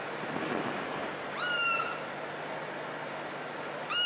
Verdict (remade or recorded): recorded